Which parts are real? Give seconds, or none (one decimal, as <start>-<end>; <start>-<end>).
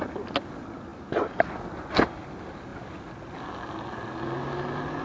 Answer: 0.0-5.0